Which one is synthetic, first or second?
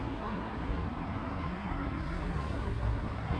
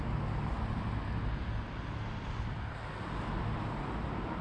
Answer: first